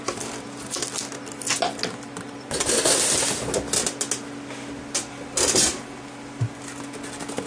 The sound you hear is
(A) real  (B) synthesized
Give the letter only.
A